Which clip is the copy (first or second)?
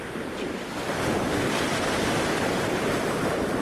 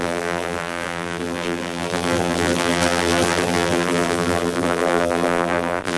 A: second